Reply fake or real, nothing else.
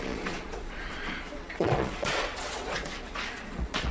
fake